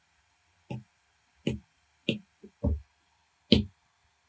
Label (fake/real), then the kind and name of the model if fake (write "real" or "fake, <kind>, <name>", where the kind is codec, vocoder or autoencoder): real